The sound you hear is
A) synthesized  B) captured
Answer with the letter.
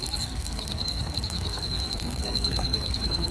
A